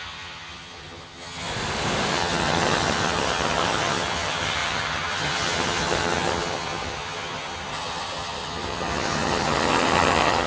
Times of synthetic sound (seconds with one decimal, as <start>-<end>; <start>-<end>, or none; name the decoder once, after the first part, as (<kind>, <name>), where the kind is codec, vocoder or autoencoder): 0.0-1.5 (vocoder, HiFi-GAN); 2.1-10.5

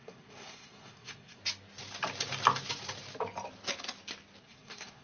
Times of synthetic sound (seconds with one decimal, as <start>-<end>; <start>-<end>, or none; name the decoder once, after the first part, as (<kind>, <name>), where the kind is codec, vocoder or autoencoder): 0.0-1.4 (codec, SNAC); 4.4-5.0

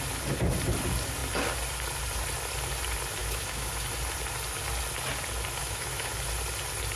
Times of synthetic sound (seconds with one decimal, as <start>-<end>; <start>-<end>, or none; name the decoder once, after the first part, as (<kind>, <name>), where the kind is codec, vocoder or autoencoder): 3.2-3.7 (autoencoder, DAC-VAE); 5.6-6.1

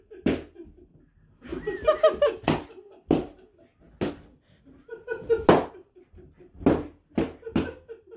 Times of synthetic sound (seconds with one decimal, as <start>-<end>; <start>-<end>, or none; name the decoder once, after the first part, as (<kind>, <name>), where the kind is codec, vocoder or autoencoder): none

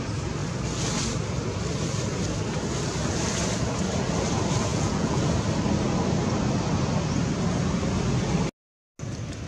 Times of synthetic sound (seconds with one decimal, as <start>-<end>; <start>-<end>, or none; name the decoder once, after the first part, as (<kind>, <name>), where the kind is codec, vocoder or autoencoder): 4.7-5.3 (vocoder, Vocos)

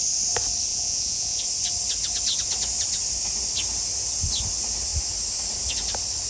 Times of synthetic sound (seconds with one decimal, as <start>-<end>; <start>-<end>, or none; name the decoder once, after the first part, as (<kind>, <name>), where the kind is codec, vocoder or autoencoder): 0.7-1.4 (vocoder, Vocos)

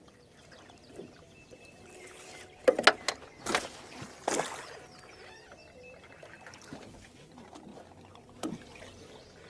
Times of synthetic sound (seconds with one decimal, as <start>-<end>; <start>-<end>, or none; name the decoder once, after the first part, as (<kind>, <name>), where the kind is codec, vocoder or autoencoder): none